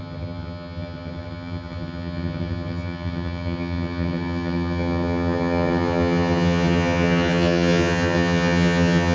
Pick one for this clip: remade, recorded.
remade